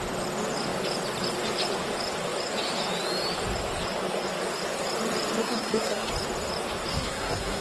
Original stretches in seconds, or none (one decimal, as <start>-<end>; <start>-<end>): 0.0-5.4; 6.1-6.9

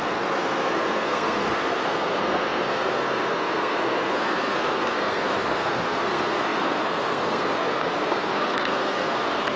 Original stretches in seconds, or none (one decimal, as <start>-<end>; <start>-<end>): none